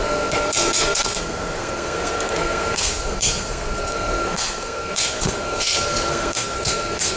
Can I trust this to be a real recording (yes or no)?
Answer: no